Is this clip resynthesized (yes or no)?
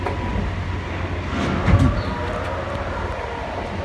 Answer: no